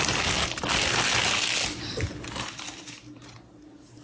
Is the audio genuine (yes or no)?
yes